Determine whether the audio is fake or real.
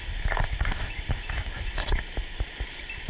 real